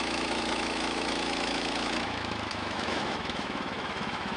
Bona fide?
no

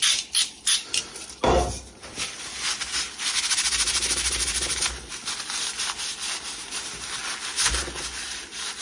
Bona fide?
yes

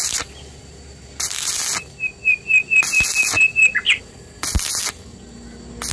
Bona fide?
yes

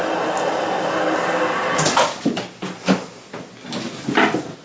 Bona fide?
yes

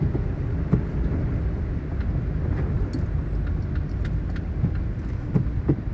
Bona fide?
yes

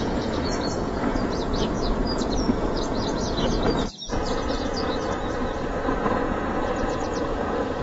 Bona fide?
no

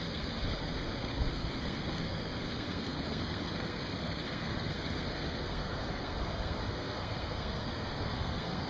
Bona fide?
no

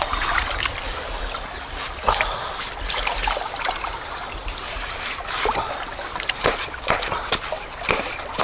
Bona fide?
yes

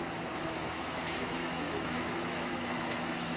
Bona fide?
no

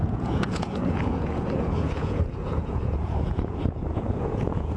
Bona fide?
no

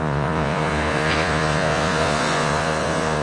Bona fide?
no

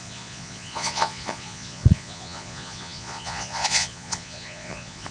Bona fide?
no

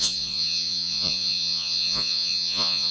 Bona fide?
no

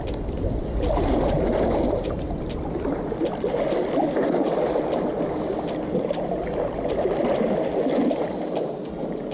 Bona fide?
yes